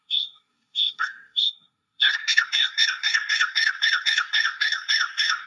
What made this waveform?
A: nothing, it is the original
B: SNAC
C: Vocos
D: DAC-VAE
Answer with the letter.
B